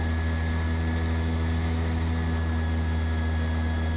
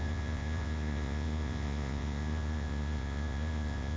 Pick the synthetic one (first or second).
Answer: second